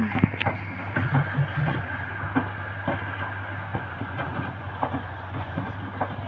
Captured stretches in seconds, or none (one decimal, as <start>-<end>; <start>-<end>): 0.0-1.5; 2.1-3.7; 5.7-6.3